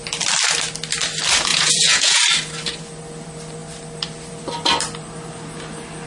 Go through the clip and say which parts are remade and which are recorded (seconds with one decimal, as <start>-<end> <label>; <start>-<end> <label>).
0.0-1.5 recorded; 1.5-2.2 remade; 2.2-6.1 recorded